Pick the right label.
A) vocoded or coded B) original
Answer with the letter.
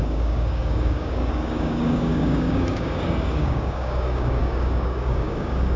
A